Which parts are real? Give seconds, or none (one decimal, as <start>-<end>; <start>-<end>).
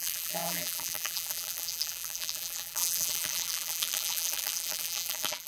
none